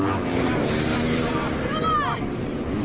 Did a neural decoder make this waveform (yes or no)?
yes